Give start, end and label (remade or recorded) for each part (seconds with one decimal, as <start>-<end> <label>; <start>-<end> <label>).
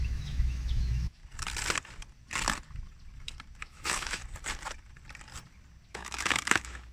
0.0-1.2 remade; 1.2-3.6 recorded; 3.6-4.2 remade; 4.2-5.9 recorded; 5.9-6.9 remade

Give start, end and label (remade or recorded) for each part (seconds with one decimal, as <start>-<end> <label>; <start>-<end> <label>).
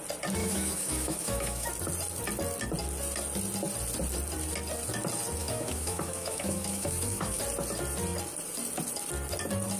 0.0-0.4 recorded; 0.4-1.7 remade; 1.7-5.4 recorded; 5.4-7.4 remade; 7.4-9.8 recorded